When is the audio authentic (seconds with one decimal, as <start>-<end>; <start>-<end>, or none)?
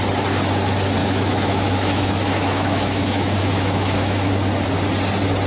0.0-1.0; 4.3-5.5